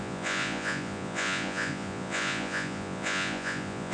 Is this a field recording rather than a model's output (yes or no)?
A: no